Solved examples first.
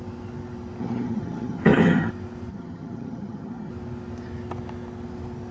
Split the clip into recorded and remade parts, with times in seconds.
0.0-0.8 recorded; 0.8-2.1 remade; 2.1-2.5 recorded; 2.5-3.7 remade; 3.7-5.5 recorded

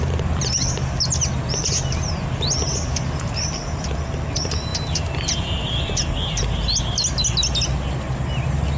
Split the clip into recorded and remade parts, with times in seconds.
0.0-8.8 recorded

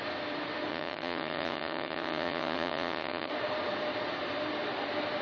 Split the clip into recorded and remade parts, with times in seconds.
0.0-0.7 recorded; 0.7-3.3 remade; 3.3-5.2 recorded

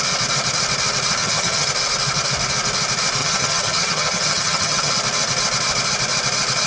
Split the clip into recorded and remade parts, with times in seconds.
0.0-1.2 recorded; 1.2-1.7 remade; 1.7-3.2 recorded; 3.2-4.9 remade; 4.9-6.7 recorded